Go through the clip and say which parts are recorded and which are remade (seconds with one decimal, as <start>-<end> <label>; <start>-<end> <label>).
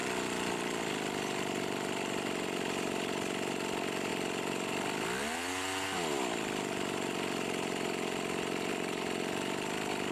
0.0-10.1 recorded